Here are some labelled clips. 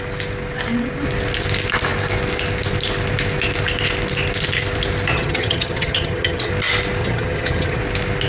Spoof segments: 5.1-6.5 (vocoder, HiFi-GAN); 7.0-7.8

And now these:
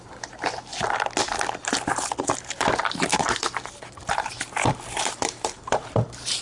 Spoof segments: 0.0-0.7 (vocoder, BigVGAN v2); 2.2-6.4

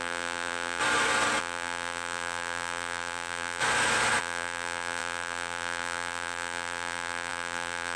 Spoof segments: 0.0-0.8 (vocoder, BigVGAN v2); 1.4-3.6; 4.2-8.0

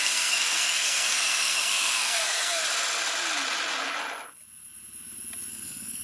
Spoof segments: 0.0-2.6 (codec, SNAC); 5.5-6.0

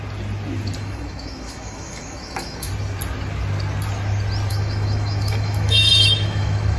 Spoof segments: 0.8-2.7 (autoencoder, DAC-VAE); 4.5-6.8

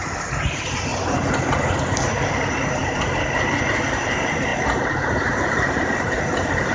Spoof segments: 4.5-6.7 (vocoder, BigVGAN v2)

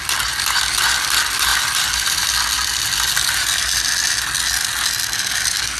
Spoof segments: 1.5-2.2 (vocoder, BigVGAN v2)

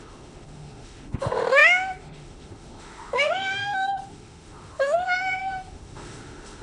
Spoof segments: 0.0-6.6 (autoencoder, DAC-VAE)